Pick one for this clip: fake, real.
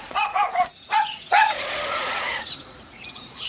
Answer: fake